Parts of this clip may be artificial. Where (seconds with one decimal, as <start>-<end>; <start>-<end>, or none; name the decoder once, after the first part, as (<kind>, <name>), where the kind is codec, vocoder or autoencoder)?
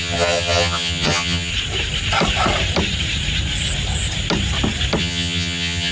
0.0-1.5 (vocoder, HiFi-GAN); 5.0-5.9